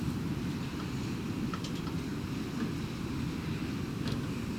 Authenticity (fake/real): real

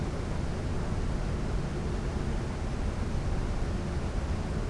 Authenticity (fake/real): real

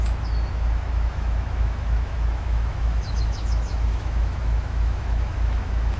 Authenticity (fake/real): fake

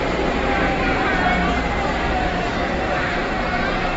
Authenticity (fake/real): real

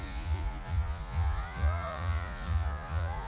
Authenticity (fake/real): fake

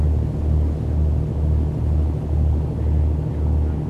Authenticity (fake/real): real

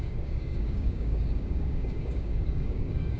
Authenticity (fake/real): fake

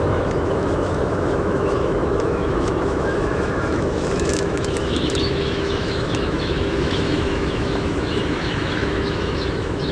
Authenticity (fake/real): fake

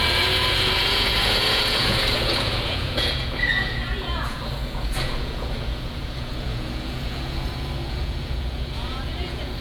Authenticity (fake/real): fake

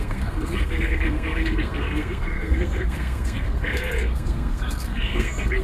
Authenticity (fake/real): fake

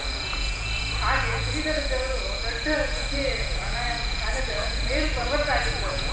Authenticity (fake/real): fake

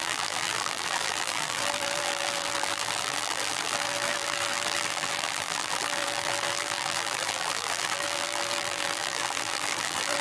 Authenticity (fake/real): fake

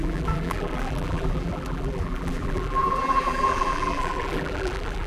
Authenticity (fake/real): fake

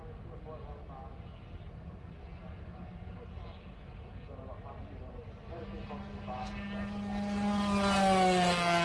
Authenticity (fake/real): real